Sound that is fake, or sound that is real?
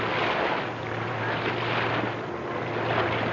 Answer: real